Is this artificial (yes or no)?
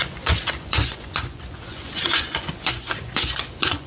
yes